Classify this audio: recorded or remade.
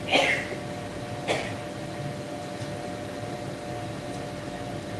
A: recorded